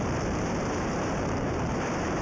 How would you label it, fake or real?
fake